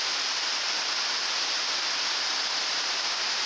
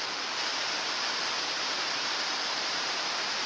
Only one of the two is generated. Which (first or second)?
second